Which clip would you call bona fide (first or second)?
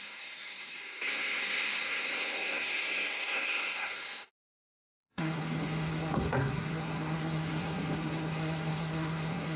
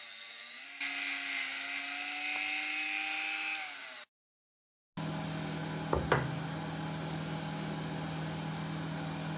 second